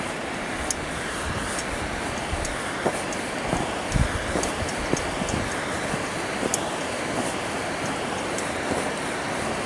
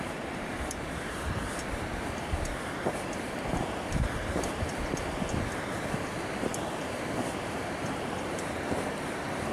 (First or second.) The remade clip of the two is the second